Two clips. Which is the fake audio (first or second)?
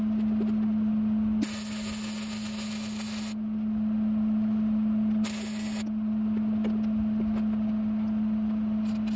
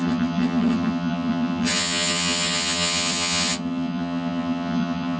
second